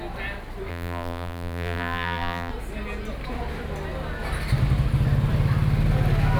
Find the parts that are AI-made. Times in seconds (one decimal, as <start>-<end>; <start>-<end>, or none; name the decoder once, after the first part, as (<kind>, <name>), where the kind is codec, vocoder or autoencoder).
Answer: 0.7-2.5 (vocoder, BigVGAN v2)

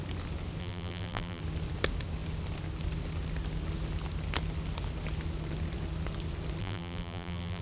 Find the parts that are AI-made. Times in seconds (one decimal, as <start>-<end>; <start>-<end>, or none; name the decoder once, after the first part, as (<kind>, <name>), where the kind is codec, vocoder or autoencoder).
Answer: 0.6-1.4 (vocoder, BigVGAN v2); 6.6-7.6

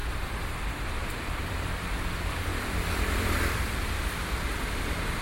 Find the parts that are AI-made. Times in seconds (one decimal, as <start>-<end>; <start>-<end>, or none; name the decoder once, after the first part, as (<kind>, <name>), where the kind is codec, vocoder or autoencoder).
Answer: 0.0-5.2 (vocoder, BigVGAN v2)

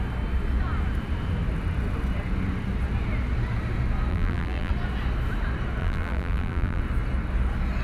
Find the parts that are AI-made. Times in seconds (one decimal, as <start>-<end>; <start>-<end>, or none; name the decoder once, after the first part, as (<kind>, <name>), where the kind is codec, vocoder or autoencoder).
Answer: 4.1-4.7 (vocoder, BigVGAN v2); 5.8-6.8

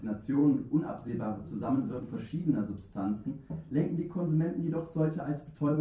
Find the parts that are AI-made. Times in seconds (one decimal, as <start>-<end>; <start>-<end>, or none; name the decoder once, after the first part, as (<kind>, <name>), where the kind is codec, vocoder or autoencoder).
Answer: 0.0-3.2 (vocoder, BigVGAN v2); 5.2-5.8

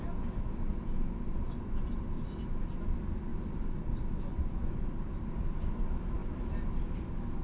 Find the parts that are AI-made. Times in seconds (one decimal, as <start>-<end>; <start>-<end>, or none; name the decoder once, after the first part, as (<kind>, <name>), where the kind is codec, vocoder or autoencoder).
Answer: 6.2-6.7 (vocoder, BigVGAN v2)